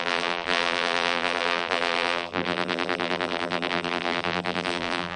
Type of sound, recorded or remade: remade